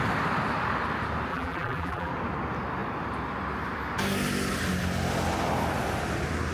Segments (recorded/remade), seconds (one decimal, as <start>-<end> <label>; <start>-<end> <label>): 0.0-1.3 recorded; 1.3-2.1 remade; 2.1-6.5 recorded